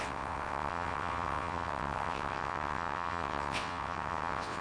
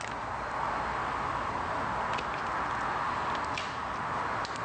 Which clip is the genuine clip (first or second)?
second